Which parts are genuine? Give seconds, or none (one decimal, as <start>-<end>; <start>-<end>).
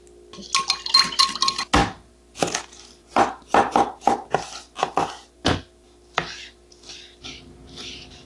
0.0-8.3